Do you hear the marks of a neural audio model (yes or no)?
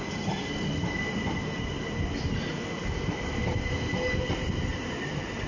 no